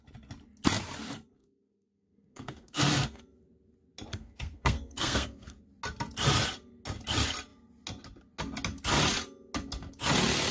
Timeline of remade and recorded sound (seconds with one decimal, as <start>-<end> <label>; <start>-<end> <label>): 0.0-1.4 recorded; 1.4-3.2 remade; 3.2-4.1 recorded; 4.1-5.6 remade; 5.6-10.5 recorded